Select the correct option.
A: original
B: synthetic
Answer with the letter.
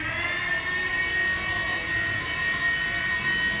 A